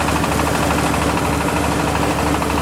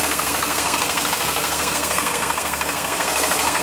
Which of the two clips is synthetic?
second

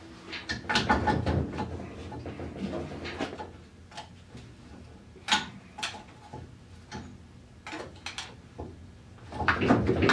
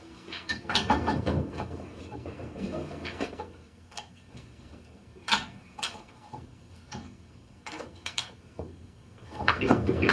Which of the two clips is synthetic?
second